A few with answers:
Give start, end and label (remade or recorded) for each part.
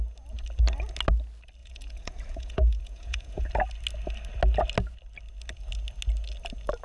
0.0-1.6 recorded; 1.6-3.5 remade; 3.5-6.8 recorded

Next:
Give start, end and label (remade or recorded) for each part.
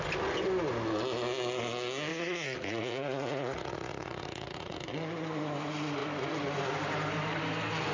0.0-2.1 recorded; 2.1-4.8 remade; 4.8-7.9 recorded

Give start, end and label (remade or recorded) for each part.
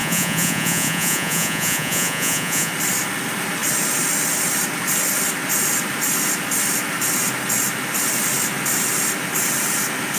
0.0-2.7 remade; 2.7-10.2 recorded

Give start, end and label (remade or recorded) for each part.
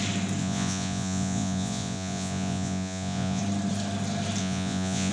0.0-0.4 recorded; 0.4-3.4 remade; 3.4-4.4 recorded; 4.4-5.1 remade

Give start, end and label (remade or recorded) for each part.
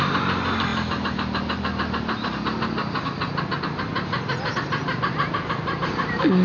0.0-6.4 recorded